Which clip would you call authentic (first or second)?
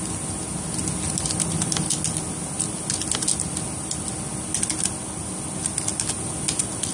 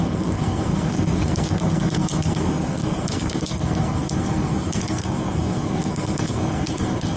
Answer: first